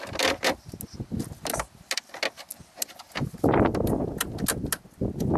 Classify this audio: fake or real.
real